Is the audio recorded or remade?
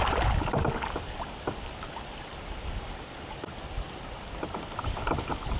recorded